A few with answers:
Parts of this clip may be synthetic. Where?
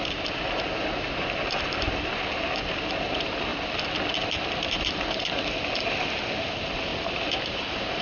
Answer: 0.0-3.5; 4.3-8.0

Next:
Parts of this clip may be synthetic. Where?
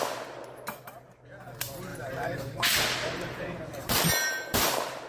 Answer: 1.9-5.1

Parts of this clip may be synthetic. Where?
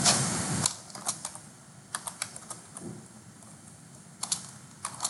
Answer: 1.2-3.5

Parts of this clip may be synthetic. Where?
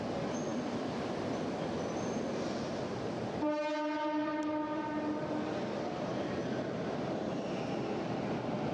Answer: 0.5-1.5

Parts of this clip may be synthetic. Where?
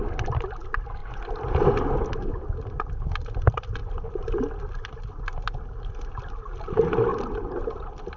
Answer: 1.0-2.1; 3.8-4.7